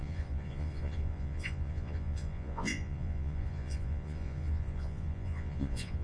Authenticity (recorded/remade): remade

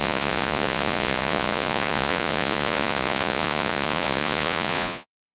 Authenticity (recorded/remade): remade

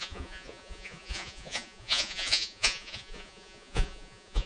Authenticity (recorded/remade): remade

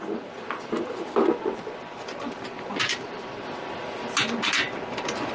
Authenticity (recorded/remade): recorded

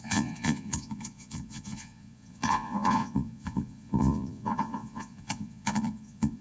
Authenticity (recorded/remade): remade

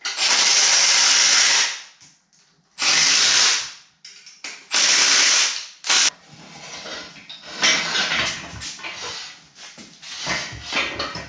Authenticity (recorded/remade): recorded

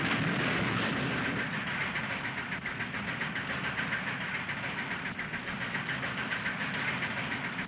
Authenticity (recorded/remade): recorded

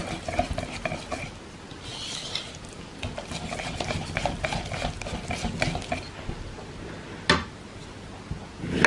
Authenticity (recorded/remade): recorded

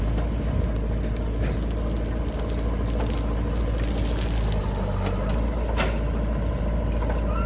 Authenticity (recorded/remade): recorded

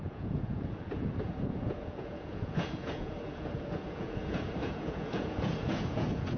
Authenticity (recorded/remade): remade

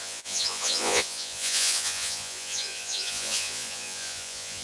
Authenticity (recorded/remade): remade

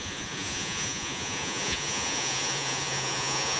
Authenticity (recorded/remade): remade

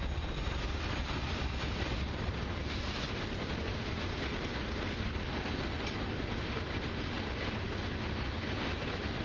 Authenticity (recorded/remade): recorded